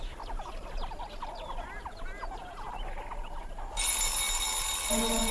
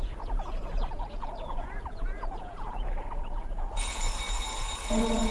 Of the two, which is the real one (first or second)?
first